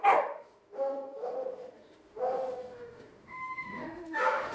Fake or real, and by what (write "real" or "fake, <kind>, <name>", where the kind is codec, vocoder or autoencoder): fake, autoencoder, DAC-VAE